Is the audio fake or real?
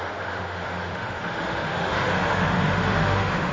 fake